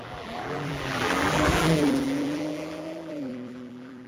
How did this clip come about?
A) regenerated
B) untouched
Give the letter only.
A